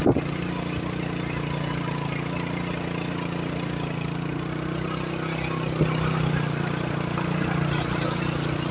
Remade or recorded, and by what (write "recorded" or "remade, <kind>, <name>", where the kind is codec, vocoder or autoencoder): recorded